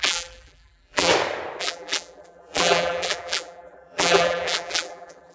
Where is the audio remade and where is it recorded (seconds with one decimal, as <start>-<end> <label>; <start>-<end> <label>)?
0.0-1.1 remade; 1.1-1.6 recorded; 1.6-5.3 remade